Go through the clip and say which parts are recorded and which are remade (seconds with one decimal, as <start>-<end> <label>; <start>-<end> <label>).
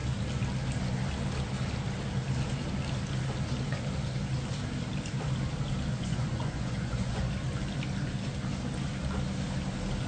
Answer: 0.0-5.9 recorded; 5.9-7.3 remade; 7.3-10.1 recorded